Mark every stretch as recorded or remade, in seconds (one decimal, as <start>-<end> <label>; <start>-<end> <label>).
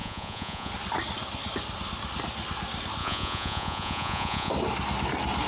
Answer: 0.0-0.7 remade; 0.7-3.0 recorded; 3.0-4.5 remade; 4.5-5.5 recorded